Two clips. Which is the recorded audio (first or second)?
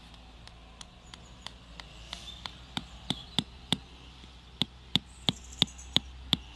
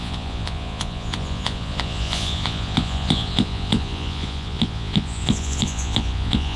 first